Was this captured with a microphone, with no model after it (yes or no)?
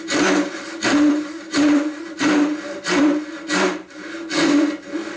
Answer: no